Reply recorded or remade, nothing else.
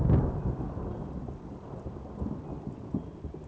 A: recorded